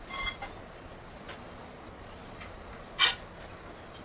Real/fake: real